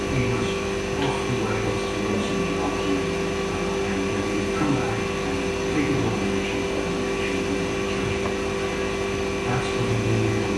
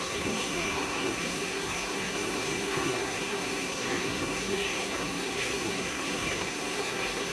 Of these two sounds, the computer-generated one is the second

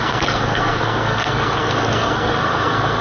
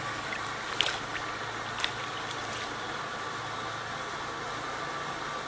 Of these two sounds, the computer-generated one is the first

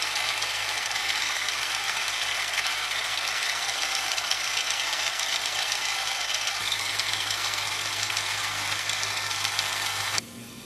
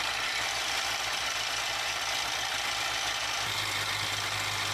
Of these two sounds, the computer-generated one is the first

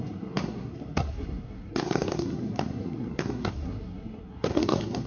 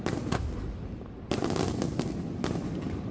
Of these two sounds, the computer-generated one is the first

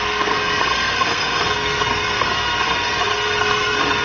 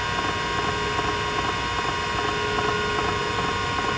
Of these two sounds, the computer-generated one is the first